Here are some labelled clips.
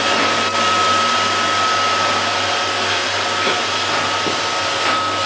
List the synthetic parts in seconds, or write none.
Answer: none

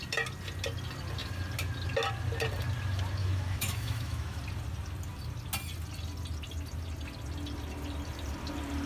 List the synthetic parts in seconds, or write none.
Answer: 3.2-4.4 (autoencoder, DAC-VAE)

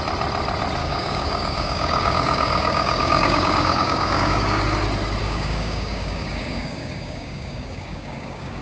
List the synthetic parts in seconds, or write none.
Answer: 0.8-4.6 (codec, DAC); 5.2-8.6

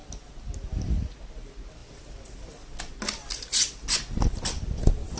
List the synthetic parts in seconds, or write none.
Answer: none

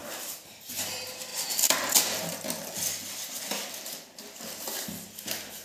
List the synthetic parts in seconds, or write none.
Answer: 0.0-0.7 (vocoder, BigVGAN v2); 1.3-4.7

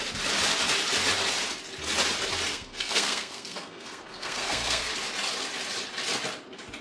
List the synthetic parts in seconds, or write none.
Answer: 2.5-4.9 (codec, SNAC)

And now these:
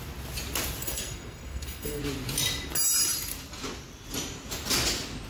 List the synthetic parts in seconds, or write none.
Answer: 0.8-2.0 (codec, SNAC)

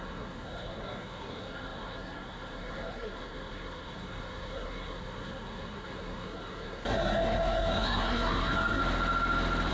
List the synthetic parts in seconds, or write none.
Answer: 0.0-8.8 (codec, SNAC)